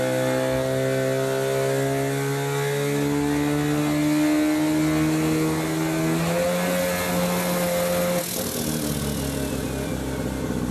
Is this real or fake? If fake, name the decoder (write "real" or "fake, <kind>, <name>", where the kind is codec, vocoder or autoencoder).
real